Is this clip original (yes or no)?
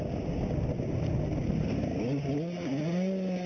yes